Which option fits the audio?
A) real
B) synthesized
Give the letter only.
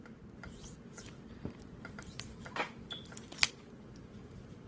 B